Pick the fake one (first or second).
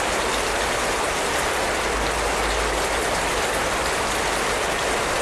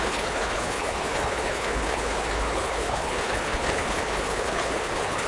second